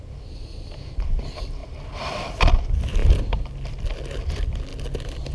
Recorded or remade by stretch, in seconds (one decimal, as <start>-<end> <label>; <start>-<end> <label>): 0.0-1.6 recorded; 1.6-2.2 remade; 2.2-5.3 recorded